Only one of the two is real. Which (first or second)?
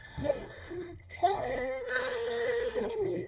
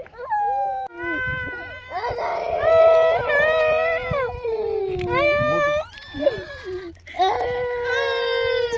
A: second